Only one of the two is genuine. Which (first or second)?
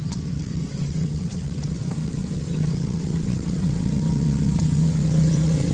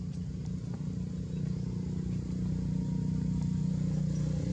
second